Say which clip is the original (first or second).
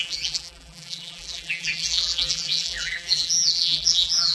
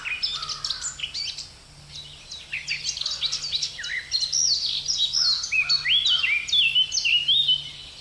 second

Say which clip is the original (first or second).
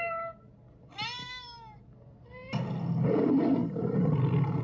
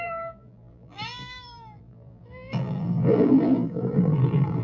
first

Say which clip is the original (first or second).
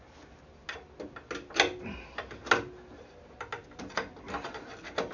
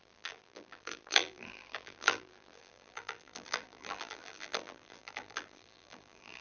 first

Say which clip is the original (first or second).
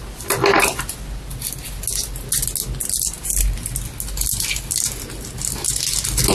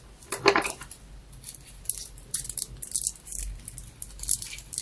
first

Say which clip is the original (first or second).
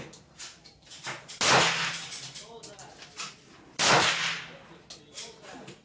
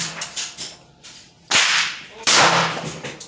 first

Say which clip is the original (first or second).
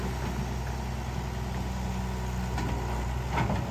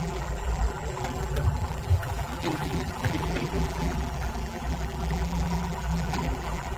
first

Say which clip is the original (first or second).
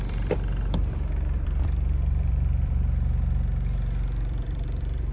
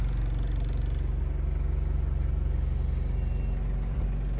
second